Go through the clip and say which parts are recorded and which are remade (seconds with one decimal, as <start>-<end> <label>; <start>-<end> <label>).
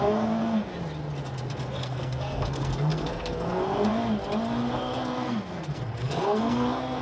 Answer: 0.0-0.7 remade; 0.7-1.6 recorded; 1.6-3.9 remade; 3.9-4.7 recorded; 4.7-7.0 remade